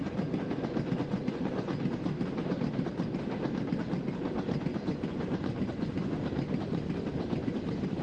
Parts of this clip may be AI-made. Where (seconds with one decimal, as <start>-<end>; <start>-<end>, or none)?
1.0-1.7; 4.7-6.1